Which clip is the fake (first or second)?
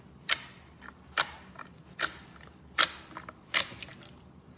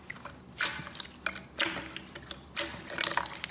first